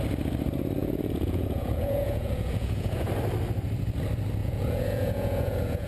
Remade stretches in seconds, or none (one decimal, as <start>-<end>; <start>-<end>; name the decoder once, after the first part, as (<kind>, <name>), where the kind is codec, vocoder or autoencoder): 0.8-3.1 (vocoder, Vocos); 4.4-5.9